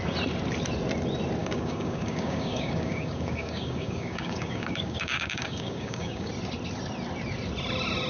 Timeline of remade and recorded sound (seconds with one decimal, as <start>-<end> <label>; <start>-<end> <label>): 0.0-1.4 recorded; 1.4-6.3 remade; 6.3-8.1 recorded